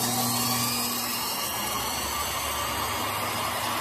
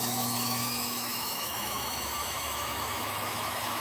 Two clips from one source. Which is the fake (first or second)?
second